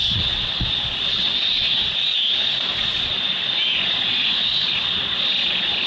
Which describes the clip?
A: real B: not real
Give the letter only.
B